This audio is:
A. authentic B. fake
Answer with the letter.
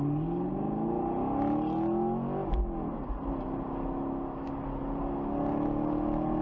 A